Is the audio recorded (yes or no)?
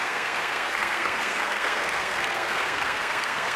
no